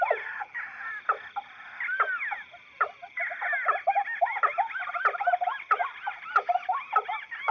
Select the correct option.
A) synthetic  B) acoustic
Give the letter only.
B